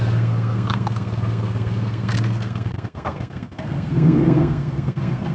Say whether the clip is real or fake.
fake